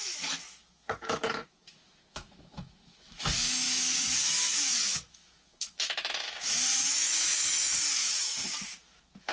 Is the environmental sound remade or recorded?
remade